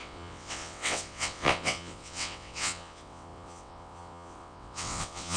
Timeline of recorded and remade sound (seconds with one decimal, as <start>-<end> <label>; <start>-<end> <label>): 0.0-5.4 remade